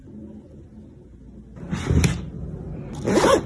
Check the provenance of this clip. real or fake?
real